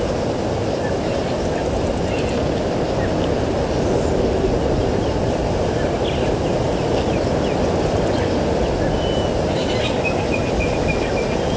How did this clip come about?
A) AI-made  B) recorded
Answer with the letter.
B